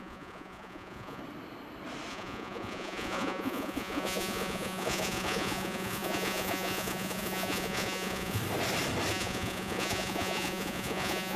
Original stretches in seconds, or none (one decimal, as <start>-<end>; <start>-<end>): 1.2-2.1; 8.4-9.1